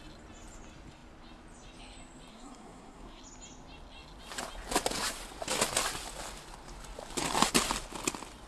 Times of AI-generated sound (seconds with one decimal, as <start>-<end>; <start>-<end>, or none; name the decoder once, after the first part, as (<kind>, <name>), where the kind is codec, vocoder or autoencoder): 2.3-3.2 (codec, SNAC)